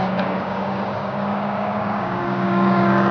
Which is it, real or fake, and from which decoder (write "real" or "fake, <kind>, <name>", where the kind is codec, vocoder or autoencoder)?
fake, codec, DAC